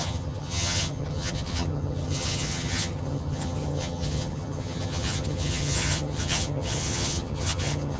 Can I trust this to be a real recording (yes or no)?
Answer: no